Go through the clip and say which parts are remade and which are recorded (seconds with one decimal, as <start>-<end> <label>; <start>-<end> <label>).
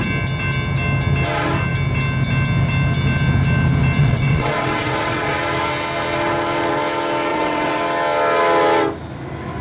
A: 0.0-4.0 recorded; 4.0-5.3 remade; 5.3-7.3 recorded; 7.3-7.8 remade; 7.8-9.6 recorded